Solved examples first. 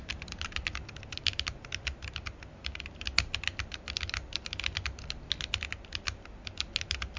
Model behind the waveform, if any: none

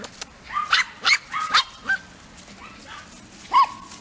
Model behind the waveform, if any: none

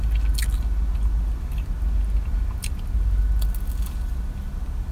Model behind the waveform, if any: none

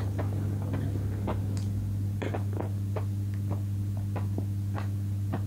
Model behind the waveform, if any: none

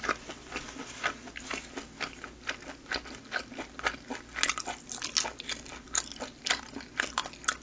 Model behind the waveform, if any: none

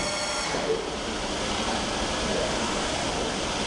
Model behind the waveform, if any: vocoder, BigVGAN v2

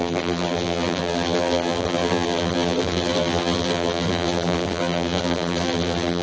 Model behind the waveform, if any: vocoder, BigVGAN v2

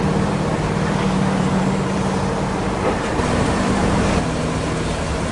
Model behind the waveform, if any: vocoder, BigVGAN v2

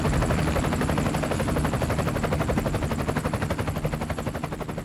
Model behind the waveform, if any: none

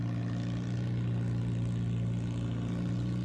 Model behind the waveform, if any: none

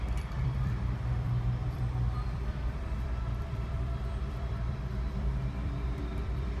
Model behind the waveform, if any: vocoder, BigVGAN v2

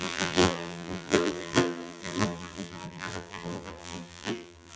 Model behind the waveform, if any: vocoder, BigVGAN v2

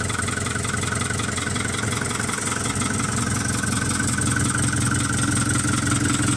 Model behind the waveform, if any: none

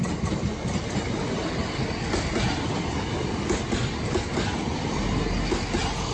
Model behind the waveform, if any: none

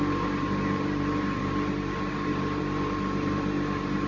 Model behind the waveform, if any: vocoder, BigVGAN v2